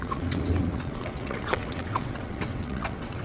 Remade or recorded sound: remade